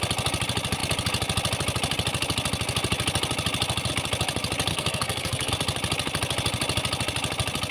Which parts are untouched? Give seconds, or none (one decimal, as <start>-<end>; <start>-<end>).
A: 0.0-4.7; 5.5-7.7